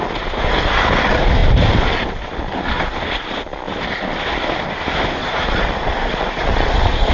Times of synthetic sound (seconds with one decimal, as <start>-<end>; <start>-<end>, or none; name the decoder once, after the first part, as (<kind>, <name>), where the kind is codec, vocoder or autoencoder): 5.2-7.1 (vocoder, Vocos)